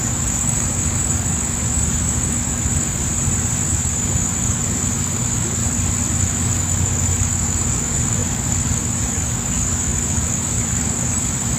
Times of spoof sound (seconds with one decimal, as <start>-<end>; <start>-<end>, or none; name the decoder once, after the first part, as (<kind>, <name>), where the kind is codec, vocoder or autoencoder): 0.0-3.0 (codec, DAC); 3.7-5.6; 6.2-11.6